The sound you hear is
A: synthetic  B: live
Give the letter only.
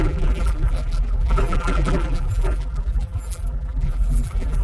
A